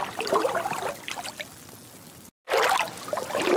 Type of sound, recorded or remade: recorded